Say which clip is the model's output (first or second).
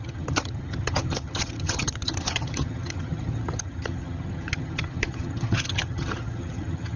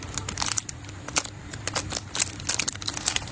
first